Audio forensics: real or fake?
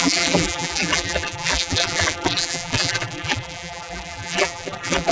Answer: fake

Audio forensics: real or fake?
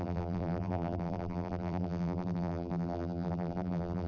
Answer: fake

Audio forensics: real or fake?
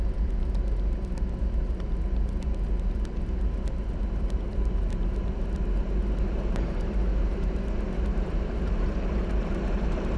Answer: fake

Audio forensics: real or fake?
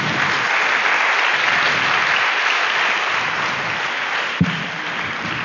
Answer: real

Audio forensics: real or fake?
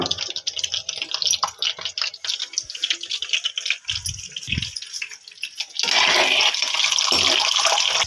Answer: real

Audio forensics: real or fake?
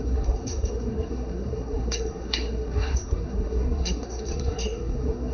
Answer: fake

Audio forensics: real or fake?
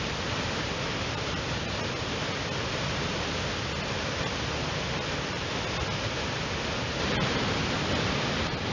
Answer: real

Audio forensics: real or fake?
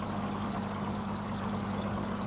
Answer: fake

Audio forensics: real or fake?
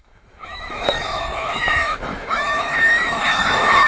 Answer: fake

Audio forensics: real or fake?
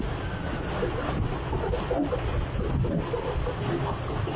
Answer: real